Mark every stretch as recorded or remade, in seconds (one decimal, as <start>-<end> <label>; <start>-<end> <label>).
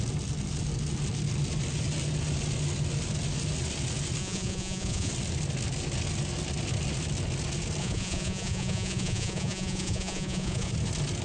0.0-4.2 recorded; 4.2-5.1 remade; 5.1-7.8 recorded; 7.8-10.7 remade; 10.7-11.2 recorded